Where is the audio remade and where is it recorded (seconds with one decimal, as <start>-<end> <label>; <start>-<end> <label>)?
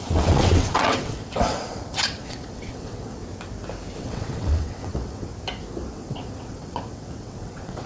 0.0-3.2 remade; 3.2-4.0 recorded; 4.0-5.3 remade; 5.3-5.9 recorded; 5.9-7.9 remade